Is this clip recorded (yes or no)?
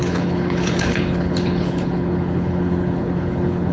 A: no